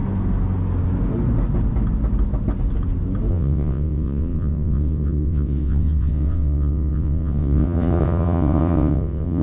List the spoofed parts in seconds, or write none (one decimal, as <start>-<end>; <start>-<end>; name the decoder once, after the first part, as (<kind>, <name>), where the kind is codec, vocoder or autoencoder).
3.3-9.4 (vocoder, WaveNeXt)